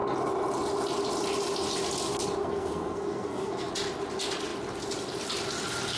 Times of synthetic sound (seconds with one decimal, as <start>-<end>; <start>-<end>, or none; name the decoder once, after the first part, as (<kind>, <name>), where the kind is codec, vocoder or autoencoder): 2.4-3.7 (codec, SNAC)